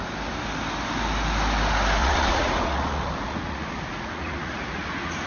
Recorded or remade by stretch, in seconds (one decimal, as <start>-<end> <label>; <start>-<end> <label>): 0.0-2.0 recorded; 2.0-5.3 remade